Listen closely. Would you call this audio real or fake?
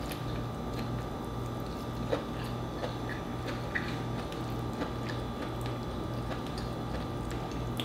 real